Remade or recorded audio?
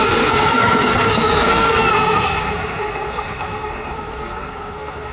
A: remade